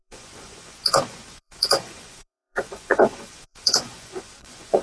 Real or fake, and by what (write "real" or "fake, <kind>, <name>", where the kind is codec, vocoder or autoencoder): fake, vocoder, Vocos